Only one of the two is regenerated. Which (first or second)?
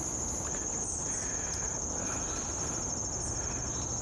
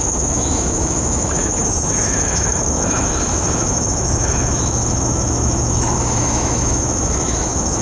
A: second